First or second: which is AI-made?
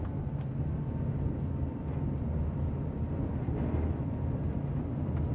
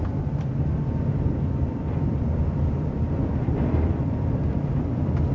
second